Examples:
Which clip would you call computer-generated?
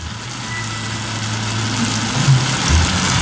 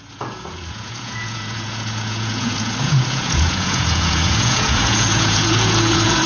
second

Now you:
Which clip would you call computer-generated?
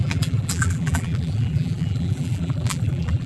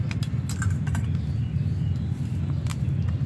first